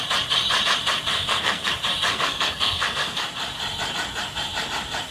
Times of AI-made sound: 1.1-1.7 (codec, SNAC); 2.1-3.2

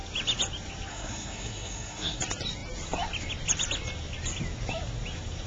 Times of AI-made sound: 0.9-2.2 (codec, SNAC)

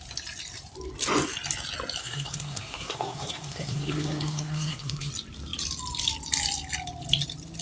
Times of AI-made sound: 2.0-5.1 (codec, SNAC)

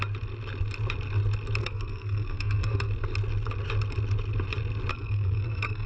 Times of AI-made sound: 1.6-2.9 (codec, SNAC); 4.9-5.9

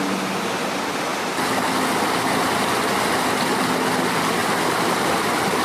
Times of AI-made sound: none

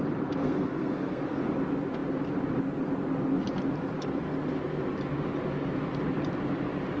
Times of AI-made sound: 0.4-1.4 (codec, SNAC)